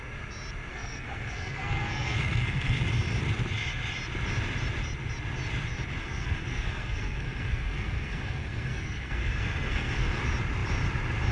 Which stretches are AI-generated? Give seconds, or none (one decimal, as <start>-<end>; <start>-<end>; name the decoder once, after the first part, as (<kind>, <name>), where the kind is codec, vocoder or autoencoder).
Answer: 0.7-2.8 (codec, SNAC); 6.0-10.2